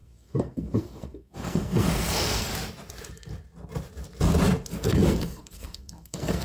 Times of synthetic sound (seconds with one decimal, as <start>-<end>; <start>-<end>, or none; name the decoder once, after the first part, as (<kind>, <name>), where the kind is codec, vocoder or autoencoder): 0.0-2.5 (codec, SNAC); 4.7-6.4